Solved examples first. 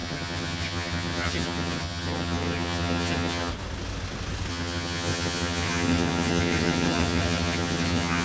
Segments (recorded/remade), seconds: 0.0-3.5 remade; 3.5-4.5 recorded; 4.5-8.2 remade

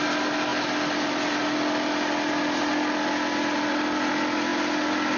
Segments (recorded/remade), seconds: 0.0-5.2 recorded